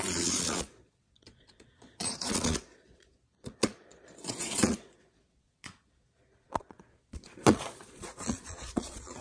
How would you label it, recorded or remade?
remade